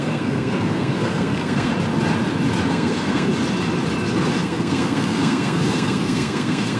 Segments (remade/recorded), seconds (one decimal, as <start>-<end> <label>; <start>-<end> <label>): 0.0-1.7 remade; 1.7-2.7 recorded; 2.7-3.3 remade; 3.3-4.4 recorded; 4.4-6.8 remade